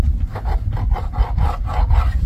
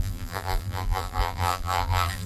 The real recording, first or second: first